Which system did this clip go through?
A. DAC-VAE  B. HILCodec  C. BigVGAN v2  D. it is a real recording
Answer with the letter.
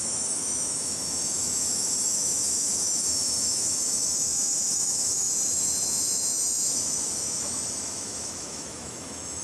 A